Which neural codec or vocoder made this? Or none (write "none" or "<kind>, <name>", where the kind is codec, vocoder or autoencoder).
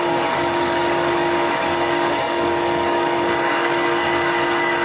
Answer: codec, DAC